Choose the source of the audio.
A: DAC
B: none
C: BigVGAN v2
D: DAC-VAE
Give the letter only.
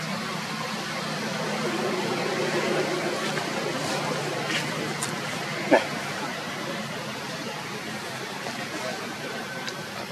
C